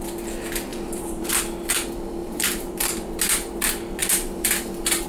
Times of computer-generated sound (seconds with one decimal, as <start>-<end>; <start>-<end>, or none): 0.7-1.3; 2.2-3.2; 4.0-4.5